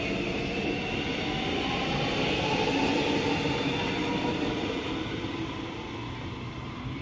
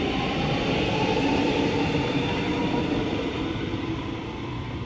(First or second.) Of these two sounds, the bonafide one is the first